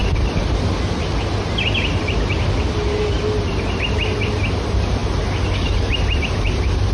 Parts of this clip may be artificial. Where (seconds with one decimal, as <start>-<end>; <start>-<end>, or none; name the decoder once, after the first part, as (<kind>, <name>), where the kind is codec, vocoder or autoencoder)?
none